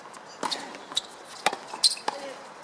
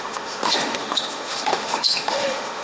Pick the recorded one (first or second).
first